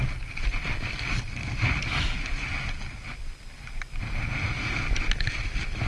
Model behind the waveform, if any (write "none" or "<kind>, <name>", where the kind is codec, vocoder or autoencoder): none